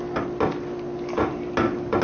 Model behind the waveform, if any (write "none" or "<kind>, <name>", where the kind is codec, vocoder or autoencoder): none